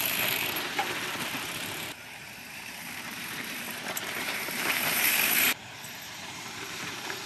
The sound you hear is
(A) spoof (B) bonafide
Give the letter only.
A